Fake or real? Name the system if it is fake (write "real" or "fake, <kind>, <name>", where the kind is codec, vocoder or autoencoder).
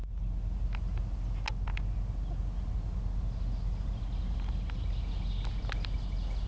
real